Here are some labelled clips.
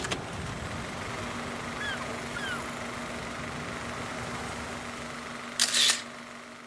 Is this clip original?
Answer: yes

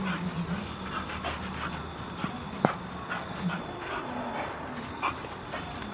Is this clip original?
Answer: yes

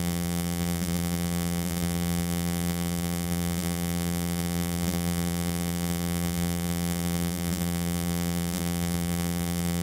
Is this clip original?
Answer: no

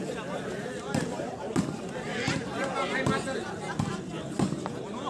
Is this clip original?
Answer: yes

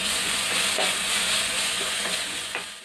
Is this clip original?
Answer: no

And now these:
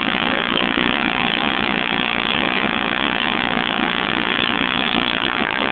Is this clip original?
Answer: no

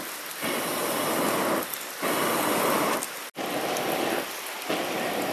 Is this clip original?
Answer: yes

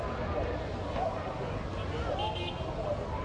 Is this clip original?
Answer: yes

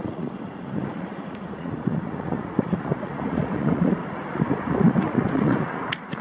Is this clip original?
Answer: no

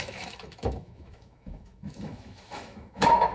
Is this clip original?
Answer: no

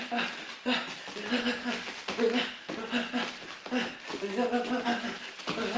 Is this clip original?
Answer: yes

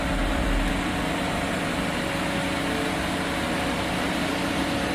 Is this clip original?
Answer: yes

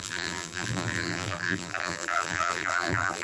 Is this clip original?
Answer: no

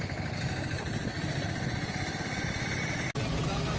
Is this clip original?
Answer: yes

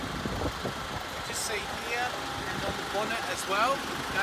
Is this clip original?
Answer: yes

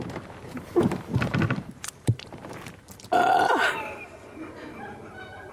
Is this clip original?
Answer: no